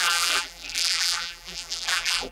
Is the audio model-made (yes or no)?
yes